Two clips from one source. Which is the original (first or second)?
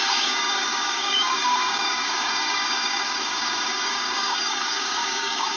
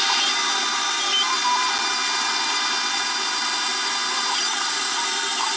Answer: second